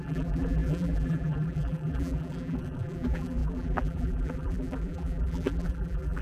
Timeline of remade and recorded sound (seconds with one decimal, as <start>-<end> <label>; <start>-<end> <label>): 0.0-6.2 remade